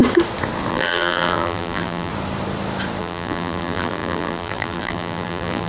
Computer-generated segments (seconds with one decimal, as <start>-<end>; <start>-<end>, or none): 0.7-2.1; 3.0-5.7